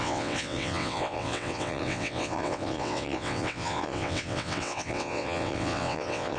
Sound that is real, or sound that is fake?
fake